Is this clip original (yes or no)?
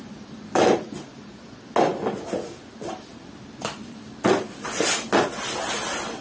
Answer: yes